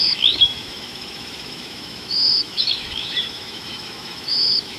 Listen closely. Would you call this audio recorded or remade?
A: remade